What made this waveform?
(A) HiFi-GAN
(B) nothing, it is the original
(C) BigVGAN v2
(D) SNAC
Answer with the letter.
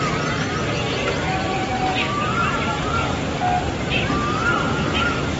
B